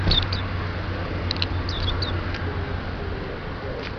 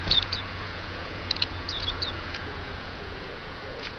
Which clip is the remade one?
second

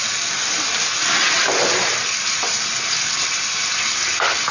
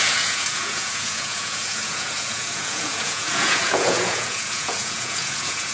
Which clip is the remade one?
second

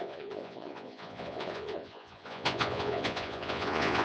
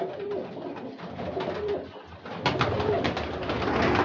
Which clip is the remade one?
first